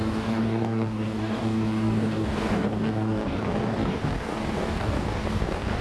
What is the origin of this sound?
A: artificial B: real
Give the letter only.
A